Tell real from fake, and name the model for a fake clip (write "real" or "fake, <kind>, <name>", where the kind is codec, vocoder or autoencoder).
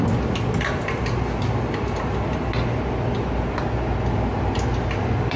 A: real